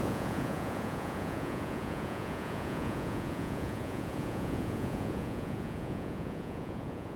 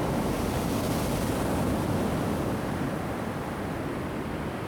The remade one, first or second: first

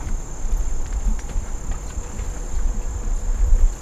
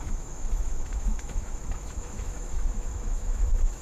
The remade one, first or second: second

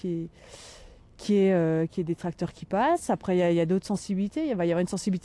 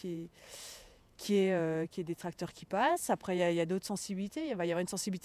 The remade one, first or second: second